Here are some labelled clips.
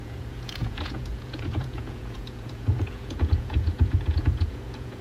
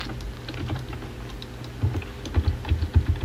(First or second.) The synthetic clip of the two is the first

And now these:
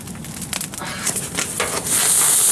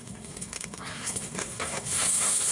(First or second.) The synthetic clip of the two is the second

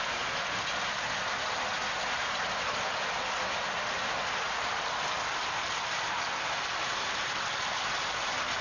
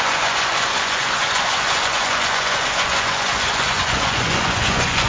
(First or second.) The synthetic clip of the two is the second